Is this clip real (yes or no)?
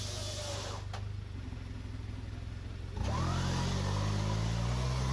yes